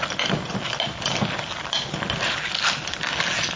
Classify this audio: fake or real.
real